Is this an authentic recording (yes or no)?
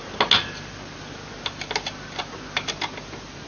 yes